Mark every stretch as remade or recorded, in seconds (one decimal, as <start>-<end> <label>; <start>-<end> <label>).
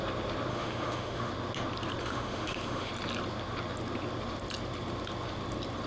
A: 0.0-0.5 recorded; 0.5-1.3 remade; 1.3-2.0 recorded; 2.0-2.9 remade; 2.9-5.9 recorded